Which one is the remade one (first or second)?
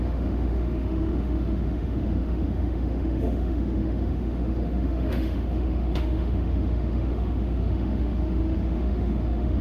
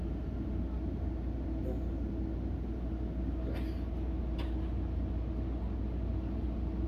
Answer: first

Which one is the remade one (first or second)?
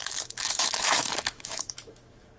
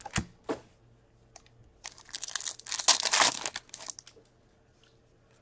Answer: first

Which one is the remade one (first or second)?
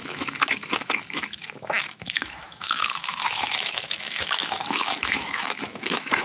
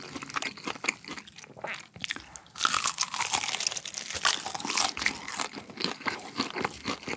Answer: first